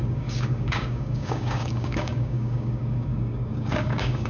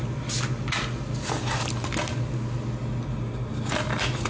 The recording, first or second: second